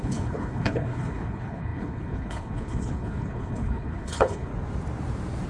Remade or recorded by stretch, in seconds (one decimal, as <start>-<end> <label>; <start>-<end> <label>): 0.0-4.5 remade; 4.5-5.5 recorded